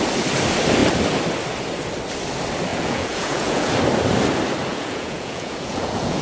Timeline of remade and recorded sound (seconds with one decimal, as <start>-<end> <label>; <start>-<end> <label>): 0.0-2.7 recorded; 2.7-3.7 remade; 3.7-4.7 recorded; 4.7-6.2 remade